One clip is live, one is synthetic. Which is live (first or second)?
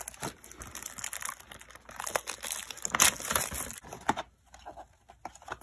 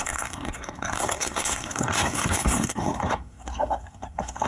first